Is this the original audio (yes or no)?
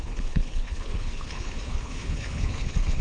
no